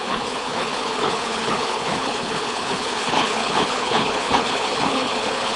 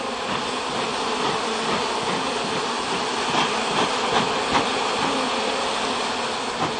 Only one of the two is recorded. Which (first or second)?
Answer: second